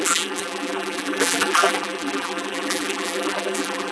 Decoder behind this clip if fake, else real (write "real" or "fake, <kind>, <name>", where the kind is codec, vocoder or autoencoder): fake, vocoder, BigVGAN v2